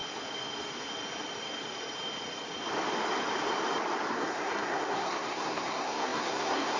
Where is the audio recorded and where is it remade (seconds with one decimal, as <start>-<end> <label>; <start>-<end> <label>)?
0.0-4.1 recorded; 4.1-6.8 remade